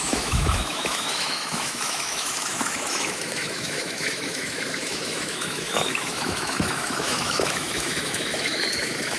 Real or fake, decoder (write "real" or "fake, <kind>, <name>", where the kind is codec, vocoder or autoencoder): fake, autoencoder, DAC-VAE